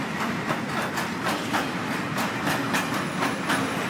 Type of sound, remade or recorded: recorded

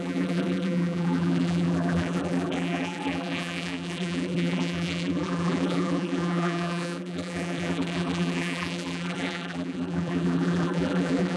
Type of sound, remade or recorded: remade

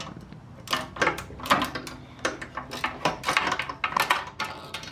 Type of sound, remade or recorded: recorded